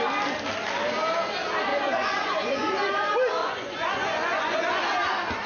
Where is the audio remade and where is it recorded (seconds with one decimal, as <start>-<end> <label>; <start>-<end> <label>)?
0.0-1.7 recorded; 1.7-2.7 remade; 2.7-3.4 recorded; 3.4-4.8 remade; 4.8-5.5 recorded